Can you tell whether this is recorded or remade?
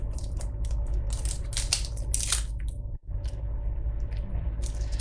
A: recorded